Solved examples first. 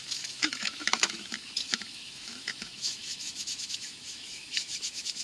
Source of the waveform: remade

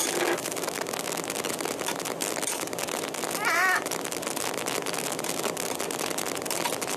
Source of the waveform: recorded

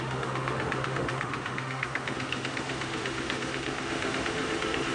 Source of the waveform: remade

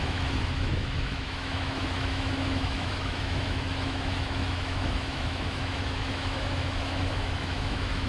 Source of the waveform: remade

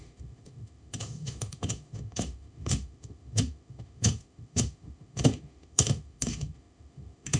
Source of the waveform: remade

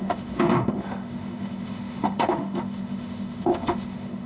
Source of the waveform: remade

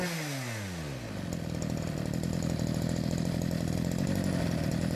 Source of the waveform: recorded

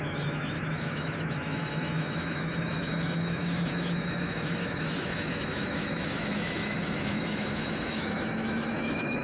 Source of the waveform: remade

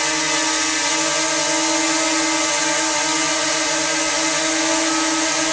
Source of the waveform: recorded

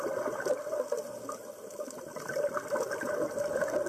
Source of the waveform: recorded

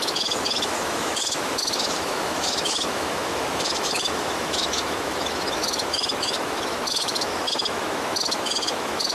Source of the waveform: remade